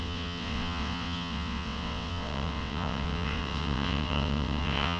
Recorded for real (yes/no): no